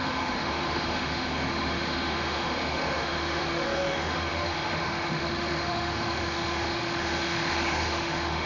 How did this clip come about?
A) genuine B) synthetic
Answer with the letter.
B